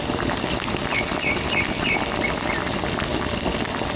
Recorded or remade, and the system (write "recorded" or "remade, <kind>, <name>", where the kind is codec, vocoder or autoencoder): recorded